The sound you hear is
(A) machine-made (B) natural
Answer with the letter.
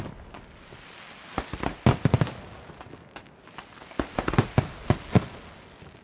B